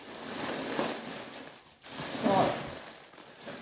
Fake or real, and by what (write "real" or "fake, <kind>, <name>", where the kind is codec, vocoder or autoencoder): real